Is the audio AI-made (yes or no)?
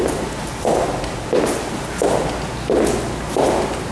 no